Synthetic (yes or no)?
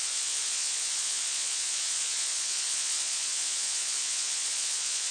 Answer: yes